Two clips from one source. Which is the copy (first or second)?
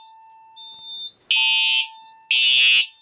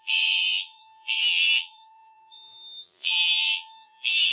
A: second